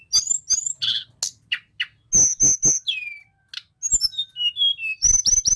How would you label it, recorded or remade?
recorded